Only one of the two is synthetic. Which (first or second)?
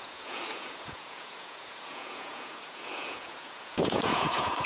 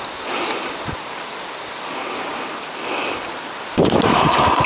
first